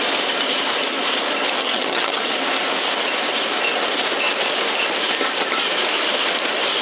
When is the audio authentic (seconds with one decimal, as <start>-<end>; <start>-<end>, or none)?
0.0-1.6; 2.2-6.8

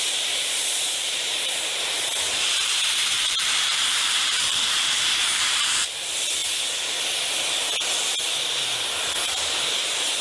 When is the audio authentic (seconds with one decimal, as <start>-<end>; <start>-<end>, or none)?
6.4-9.6

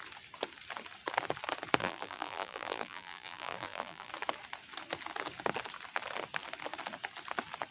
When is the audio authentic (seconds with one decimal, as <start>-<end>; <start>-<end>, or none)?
0.0-1.8; 4.1-7.7

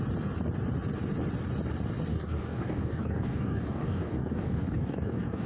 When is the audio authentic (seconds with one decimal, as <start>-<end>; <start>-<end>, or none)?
0.0-2.1

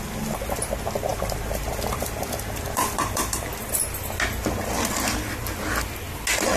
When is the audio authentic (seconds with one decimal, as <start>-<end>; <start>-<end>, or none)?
0.0-1.1; 3.5-6.6

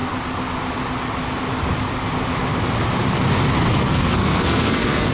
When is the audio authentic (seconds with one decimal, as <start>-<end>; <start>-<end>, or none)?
0.0-3.7

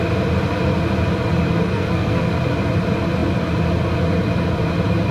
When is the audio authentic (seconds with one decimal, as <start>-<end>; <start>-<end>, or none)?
0.0-1.7; 2.3-5.1